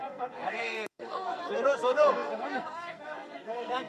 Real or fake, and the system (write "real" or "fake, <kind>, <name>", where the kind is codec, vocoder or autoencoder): fake, codec, SNAC